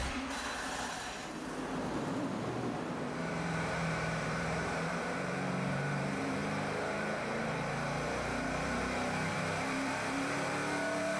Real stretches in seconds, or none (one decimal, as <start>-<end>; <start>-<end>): 0.0-3.3